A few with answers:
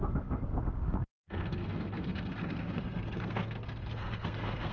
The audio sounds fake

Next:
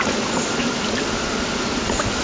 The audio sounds real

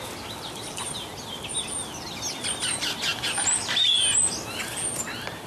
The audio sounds real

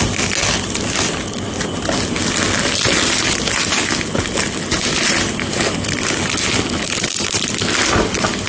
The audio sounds real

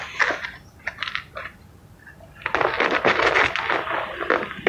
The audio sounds real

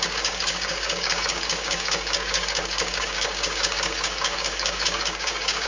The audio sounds fake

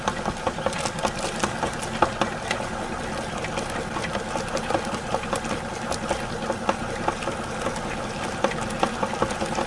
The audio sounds real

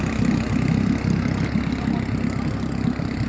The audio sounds real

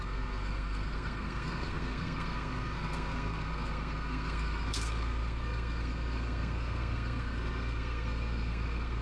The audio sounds fake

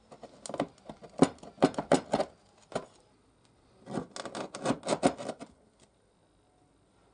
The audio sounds real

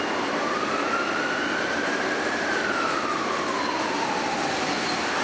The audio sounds fake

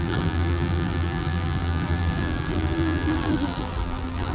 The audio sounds fake